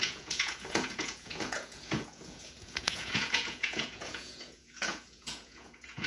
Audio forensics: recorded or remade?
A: remade